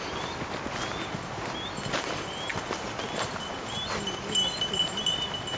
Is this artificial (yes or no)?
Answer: no